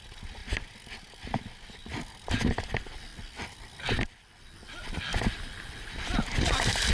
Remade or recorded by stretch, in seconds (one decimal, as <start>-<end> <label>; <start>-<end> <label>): 0.0-6.9 recorded